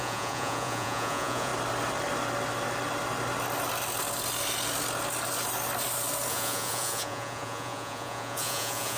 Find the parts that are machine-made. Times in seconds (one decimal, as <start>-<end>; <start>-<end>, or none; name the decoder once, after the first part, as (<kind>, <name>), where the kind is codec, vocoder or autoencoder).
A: 0.0-1.5 (vocoder, Vocos); 6.3-9.0

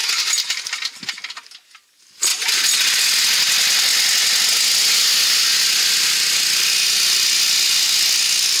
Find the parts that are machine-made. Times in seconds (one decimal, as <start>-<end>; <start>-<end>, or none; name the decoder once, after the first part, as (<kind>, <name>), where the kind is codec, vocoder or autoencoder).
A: none